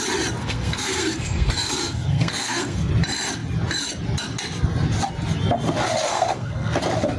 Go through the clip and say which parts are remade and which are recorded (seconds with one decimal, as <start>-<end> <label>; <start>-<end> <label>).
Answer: 0.0-0.4 recorded; 0.4-2.9 remade; 2.9-6.1 recorded; 6.1-6.8 remade; 6.8-7.2 recorded